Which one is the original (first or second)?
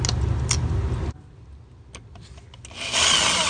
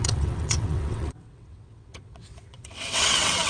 first